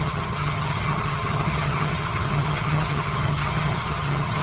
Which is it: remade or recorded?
remade